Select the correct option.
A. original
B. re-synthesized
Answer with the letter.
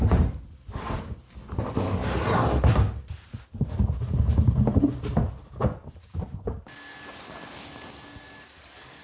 A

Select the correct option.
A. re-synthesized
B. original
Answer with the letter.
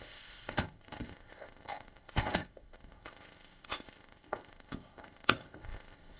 A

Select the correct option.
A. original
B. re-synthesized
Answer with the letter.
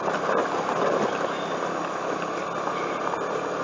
A